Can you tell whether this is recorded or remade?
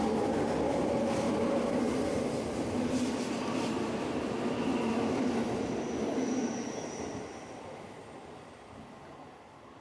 recorded